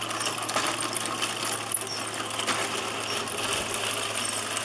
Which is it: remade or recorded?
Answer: recorded